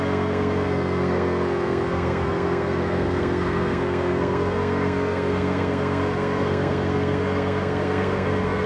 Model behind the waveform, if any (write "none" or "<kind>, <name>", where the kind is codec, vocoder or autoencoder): codec, SNAC